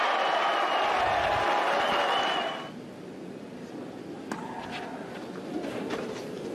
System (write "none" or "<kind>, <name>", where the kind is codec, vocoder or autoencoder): none